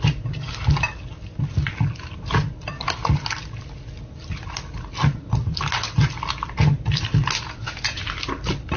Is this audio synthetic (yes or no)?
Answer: no